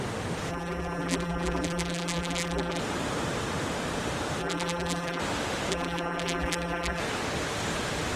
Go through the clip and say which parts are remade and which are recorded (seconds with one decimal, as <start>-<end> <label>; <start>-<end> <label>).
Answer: 0.0-0.5 recorded; 0.5-2.8 remade; 2.8-4.4 recorded; 4.4-5.2 remade; 5.2-5.7 recorded; 5.7-7.0 remade; 7.0-8.2 recorded